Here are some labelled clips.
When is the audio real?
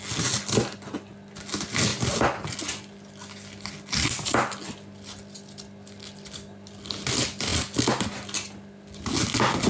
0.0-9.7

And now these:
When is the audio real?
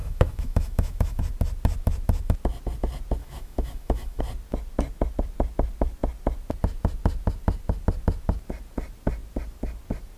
1.2-3.2; 4.2-10.2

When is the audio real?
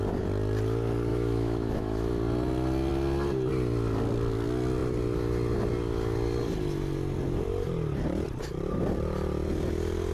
0.0-1.1; 2.1-10.1